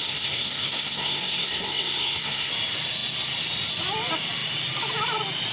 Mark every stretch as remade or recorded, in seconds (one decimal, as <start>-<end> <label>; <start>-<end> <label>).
0.0-2.5 remade; 2.5-5.5 recorded